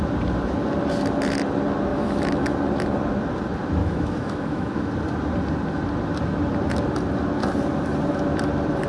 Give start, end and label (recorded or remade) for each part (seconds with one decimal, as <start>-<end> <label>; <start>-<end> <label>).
0.0-1.9 recorded; 1.9-2.5 remade; 2.5-3.8 recorded; 3.8-4.9 remade; 4.9-8.9 recorded